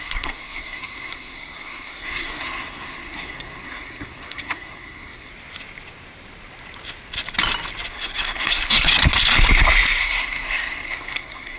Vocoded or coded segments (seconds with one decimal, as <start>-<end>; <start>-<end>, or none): 0.0-5.3; 7.9-8.9; 10.0-11.6

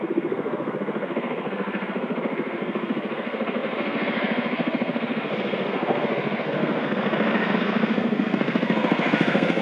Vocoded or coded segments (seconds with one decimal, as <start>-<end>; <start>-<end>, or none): 0.0-9.6

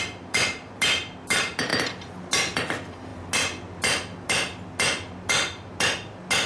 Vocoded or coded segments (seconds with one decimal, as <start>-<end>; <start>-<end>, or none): none

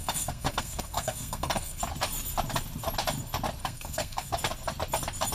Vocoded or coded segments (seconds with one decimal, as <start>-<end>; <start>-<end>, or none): 0.0-1.8; 3.6-4.3

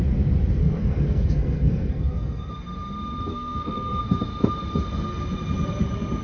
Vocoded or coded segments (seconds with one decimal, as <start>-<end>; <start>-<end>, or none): 0.6-2.5; 3.3-4.0

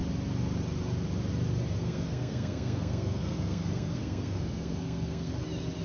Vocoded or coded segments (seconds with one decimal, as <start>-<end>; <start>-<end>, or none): 1.8-5.3